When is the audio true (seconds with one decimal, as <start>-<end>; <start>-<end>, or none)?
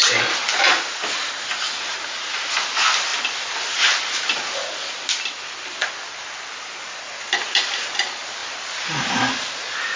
0.0-10.0